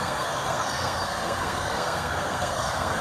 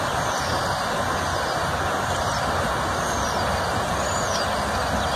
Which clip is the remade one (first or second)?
first